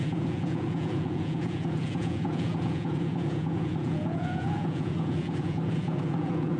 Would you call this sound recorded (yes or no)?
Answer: no